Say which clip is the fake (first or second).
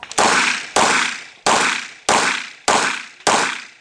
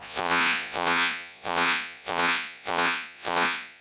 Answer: second